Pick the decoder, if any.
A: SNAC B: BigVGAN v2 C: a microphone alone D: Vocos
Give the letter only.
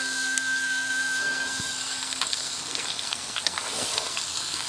A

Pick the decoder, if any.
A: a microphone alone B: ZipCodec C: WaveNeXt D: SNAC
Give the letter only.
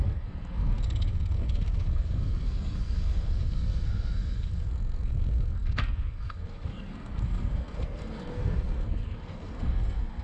D